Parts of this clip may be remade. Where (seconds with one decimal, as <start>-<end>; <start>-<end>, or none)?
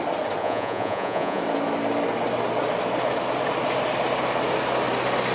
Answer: 0.4-1.4